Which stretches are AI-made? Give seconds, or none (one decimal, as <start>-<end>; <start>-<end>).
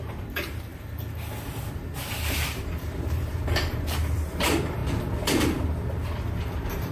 0.0-0.7; 1.7-4.8; 6.4-6.9